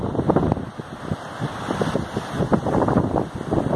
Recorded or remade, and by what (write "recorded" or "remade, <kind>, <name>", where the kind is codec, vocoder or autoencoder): recorded